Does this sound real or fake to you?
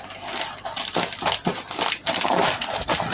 real